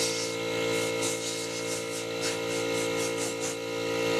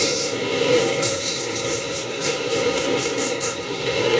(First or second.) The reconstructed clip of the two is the second